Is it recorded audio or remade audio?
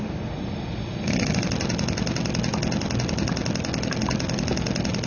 recorded